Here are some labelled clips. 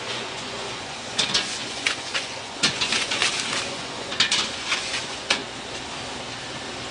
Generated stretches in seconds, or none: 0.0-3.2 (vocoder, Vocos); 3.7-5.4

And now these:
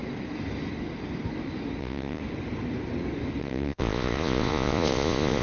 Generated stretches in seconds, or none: 1.8-2.2 (vocoder, Vocos); 3.4-5.4

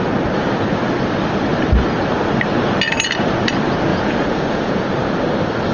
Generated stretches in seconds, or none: 3.9-5.1 (vocoder, Vocos)

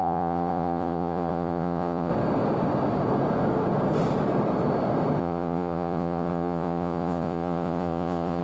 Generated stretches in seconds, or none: 0.0-2.1 (vocoder, Vocos); 5.2-8.4

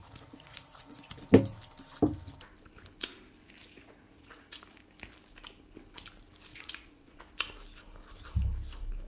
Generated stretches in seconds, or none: 0.0-1.2 (vocoder, Vocos); 3.6-4.6; 6.5-7.2

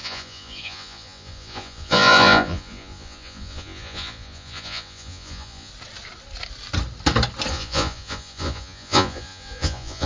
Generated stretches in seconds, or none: 0.0-5.7 (vocoder, Vocos); 7.5-10.1

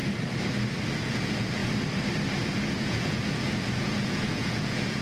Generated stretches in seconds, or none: 1.0-1.6 (vocoder, Vocos); 2.9-5.0